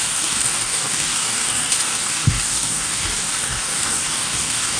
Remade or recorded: remade